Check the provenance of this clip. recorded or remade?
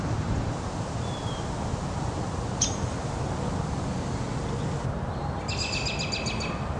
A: recorded